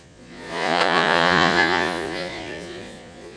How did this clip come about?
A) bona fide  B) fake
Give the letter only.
B